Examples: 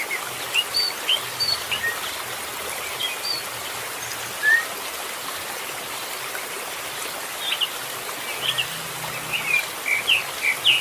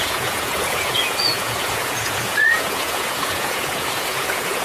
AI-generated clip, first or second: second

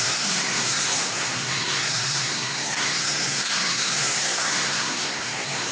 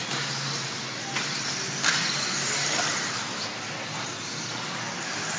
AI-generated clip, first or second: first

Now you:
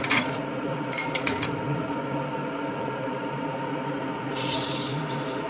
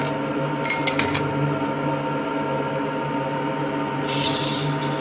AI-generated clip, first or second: first